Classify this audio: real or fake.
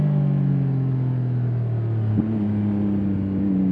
real